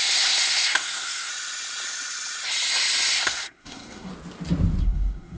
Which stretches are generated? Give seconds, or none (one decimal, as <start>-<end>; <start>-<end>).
0.0-1.3; 3.1-4.1; 4.8-5.4